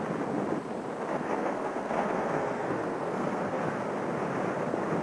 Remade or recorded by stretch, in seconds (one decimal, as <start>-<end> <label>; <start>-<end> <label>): 0.0-1.1 recorded; 1.1-3.8 remade; 3.8-5.0 recorded